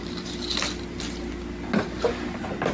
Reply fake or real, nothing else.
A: real